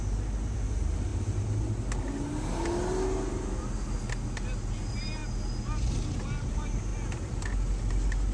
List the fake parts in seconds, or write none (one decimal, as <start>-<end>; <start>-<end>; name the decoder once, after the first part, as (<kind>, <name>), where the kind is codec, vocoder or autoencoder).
none